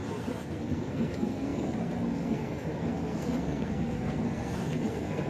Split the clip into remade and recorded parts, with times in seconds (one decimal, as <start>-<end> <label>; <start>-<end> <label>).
0.0-5.3 remade